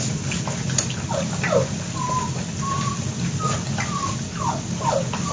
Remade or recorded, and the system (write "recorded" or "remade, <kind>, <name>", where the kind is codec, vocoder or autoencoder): recorded